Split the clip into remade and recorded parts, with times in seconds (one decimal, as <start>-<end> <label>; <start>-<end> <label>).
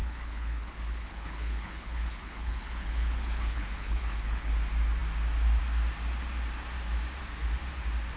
0.0-4.5 remade; 4.5-8.2 recorded